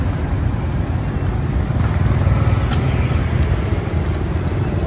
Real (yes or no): yes